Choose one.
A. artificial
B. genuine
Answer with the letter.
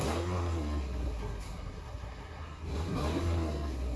A